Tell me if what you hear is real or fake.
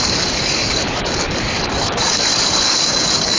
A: fake